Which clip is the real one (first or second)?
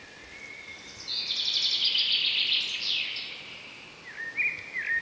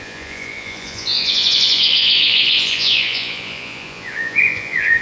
first